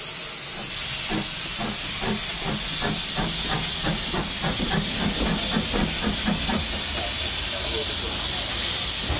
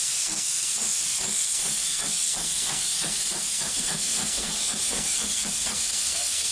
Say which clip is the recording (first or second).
first